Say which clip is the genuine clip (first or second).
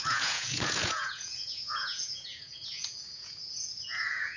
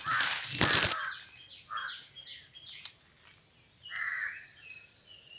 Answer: second